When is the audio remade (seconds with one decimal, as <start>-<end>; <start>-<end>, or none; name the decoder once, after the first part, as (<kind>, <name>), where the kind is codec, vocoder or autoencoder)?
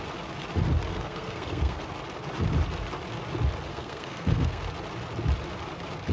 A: 0.9-1.9 (codec, SNAC); 3.7-4.6